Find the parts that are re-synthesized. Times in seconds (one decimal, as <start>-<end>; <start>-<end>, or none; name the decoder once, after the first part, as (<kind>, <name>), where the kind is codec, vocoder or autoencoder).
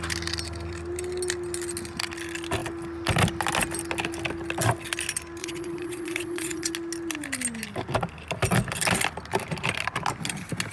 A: 5.4-6.7 (vocoder, Vocos)